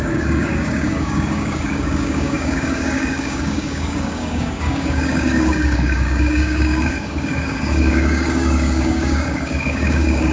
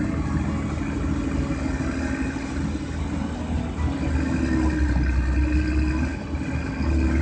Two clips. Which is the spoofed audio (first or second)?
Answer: first